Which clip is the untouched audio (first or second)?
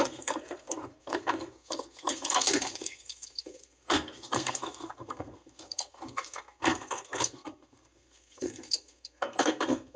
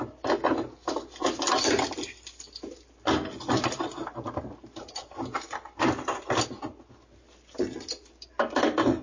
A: second